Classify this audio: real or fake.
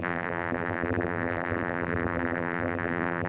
fake